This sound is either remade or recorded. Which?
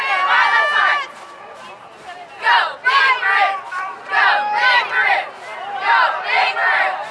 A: recorded